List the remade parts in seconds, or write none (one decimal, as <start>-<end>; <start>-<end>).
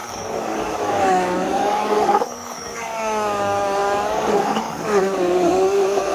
0.0-6.1